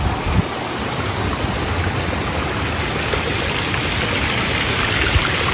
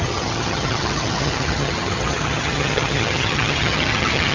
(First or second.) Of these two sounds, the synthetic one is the second